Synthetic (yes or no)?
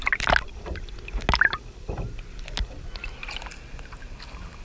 no